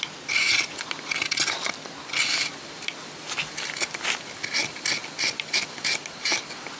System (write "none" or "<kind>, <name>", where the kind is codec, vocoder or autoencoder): none